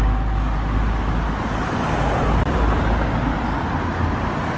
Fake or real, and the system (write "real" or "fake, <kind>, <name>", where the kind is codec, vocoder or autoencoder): real